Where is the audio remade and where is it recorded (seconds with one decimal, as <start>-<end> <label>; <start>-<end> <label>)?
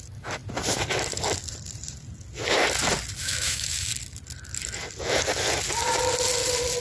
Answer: 0.0-3.2 recorded; 3.2-3.9 remade; 3.9-6.8 recorded